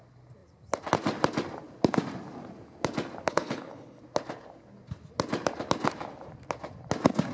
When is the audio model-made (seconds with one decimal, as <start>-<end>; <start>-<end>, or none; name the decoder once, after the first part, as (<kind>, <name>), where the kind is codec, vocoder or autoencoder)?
3.3-4.0 (codec, HILCodec)